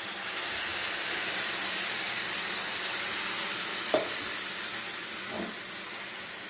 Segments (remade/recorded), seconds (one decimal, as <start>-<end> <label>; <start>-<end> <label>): 0.0-6.5 recorded

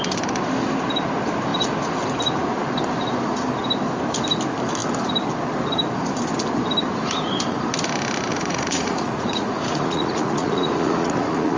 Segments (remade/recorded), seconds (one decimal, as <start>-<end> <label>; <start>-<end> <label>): 0.0-8.3 recorded; 8.3-11.6 remade

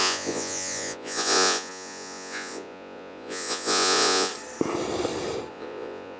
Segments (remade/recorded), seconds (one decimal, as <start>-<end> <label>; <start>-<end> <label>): 0.0-4.3 remade; 4.3-5.5 recorded; 5.5-6.2 remade

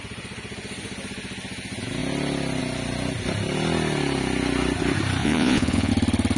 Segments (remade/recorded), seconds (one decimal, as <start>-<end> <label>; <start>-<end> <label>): 0.0-5.2 recorded; 5.2-5.9 remade; 5.9-6.4 recorded

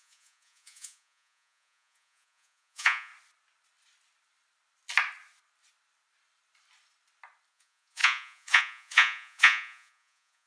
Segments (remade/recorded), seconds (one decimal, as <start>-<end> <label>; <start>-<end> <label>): 0.0-3.1 remade; 3.1-7.5 recorded; 7.5-10.5 remade

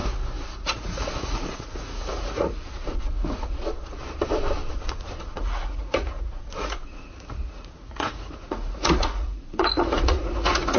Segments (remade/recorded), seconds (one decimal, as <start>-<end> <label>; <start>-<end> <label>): 0.0-4.0 remade; 4.0-4.7 recorded; 4.7-10.8 remade

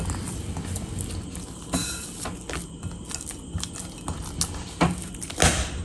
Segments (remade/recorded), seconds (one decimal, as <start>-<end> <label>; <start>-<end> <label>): 0.0-5.8 recorded

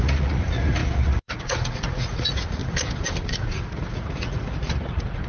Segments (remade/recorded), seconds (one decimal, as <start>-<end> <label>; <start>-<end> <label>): 0.0-2.6 remade; 2.6-3.2 recorded; 3.2-5.3 remade